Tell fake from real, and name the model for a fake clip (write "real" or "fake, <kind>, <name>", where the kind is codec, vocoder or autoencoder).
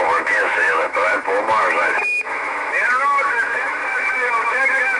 fake, autoencoder, DAC-VAE